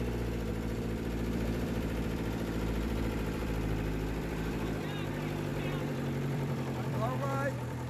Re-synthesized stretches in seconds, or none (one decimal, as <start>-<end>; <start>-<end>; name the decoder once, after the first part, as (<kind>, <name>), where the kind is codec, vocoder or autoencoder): 0.5-5.1 (vocoder, BigVGAN v2); 5.5-7.9